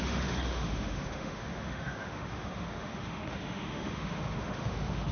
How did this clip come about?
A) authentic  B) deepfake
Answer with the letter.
B